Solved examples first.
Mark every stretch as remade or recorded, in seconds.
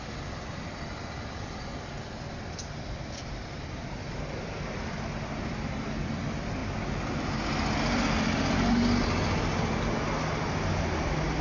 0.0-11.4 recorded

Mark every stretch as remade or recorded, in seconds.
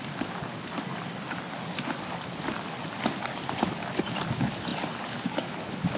0.0-6.0 recorded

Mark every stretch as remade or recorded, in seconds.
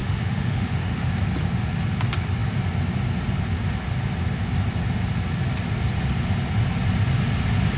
0.0-1.1 remade; 1.1-7.8 recorded